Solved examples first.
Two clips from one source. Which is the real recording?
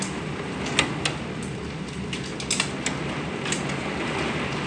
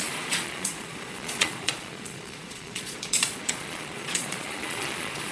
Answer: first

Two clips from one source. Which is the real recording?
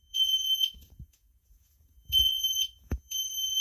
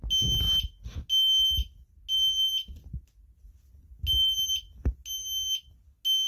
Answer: second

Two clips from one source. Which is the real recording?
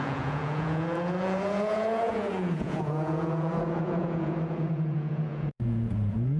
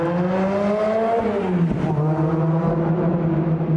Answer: second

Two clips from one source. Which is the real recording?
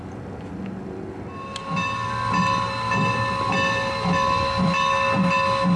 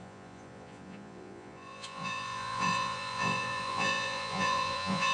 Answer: first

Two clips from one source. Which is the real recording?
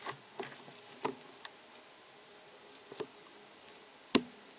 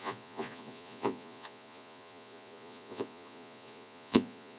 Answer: first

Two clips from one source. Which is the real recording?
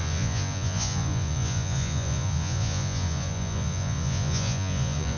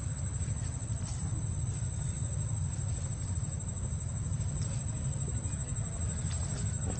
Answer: second